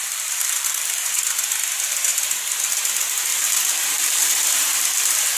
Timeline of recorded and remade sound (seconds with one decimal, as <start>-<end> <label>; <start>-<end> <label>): 0.0-1.1 remade; 1.1-3.3 recorded; 3.3-4.5 remade; 4.5-5.4 recorded